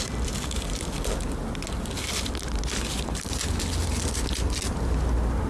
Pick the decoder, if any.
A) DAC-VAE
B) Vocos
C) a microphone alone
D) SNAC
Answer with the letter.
C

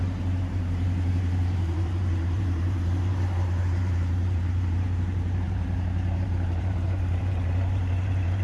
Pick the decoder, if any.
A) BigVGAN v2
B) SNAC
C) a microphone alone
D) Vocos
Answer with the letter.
A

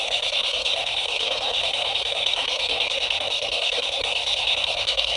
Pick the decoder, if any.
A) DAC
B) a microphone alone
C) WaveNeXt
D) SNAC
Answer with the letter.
D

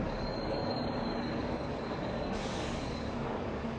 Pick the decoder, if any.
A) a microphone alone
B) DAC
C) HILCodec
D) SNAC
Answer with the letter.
B